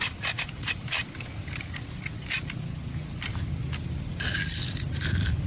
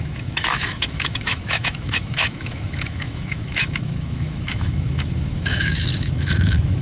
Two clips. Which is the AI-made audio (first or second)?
second